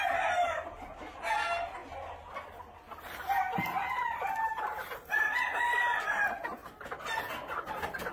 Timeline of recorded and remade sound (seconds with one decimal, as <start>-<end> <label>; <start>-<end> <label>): 0.0-8.1 recorded